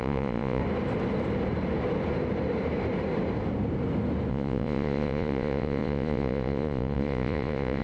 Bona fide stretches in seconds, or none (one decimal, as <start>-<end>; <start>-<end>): 0.6-4.3